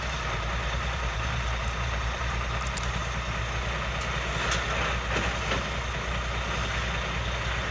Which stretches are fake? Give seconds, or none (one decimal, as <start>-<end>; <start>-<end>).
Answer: 0.0-3.0